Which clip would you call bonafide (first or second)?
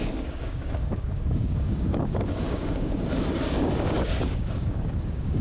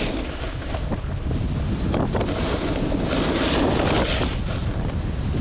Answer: second